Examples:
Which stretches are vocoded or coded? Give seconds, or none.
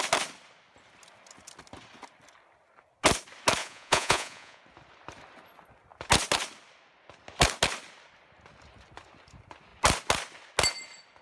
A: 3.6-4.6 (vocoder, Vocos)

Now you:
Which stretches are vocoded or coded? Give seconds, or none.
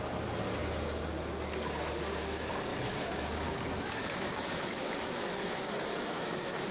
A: 2.7-6.7 (autoencoder, DAC-VAE)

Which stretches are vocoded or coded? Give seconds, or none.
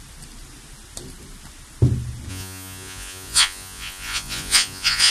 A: 2.3-5.1 (vocoder, Vocos)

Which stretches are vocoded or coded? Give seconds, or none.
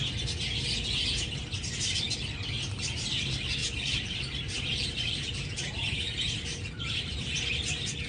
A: 3.6-7.3 (vocoder, BigVGAN v2)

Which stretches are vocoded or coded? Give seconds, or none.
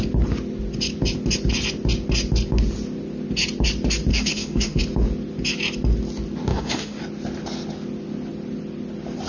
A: 4.1-4.8 (autoencoder, DAC-VAE); 6.5-7.0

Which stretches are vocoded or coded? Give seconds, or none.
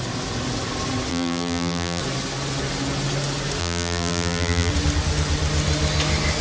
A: 1.1-2.0 (vocoder, BigVGAN v2); 3.6-4.7